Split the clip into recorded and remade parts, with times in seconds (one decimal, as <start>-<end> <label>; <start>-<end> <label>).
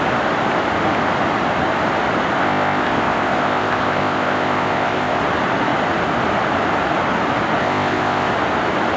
0.0-2.4 recorded; 2.4-5.2 remade; 5.2-7.6 recorded; 7.6-8.3 remade; 8.3-9.0 recorded